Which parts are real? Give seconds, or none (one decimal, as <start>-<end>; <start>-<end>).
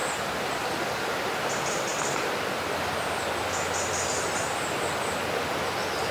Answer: 0.0-6.1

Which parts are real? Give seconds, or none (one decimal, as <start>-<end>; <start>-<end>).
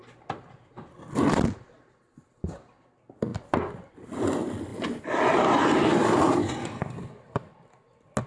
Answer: 0.0-4.7; 7.0-8.3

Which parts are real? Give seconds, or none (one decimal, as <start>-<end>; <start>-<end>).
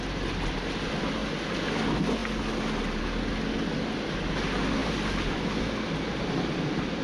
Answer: 0.0-7.0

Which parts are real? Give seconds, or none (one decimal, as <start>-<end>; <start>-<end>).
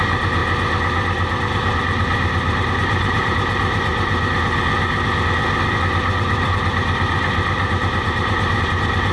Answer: 0.4-1.8; 3.9-6.0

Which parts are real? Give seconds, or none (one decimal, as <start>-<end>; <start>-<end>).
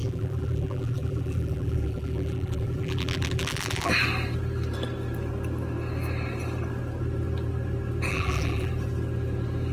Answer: 3.9-8.1; 8.7-9.7